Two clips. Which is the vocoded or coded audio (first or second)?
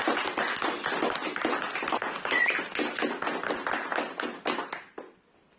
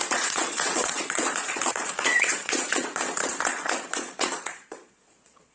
second